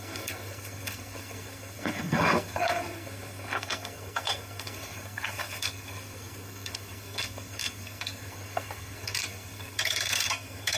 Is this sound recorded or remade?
remade